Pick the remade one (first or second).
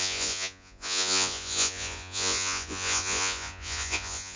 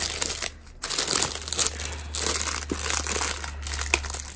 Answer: first